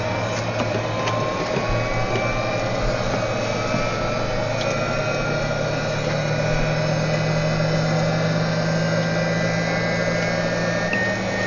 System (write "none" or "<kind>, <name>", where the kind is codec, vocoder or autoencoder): none